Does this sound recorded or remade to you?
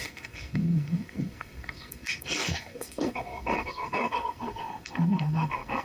remade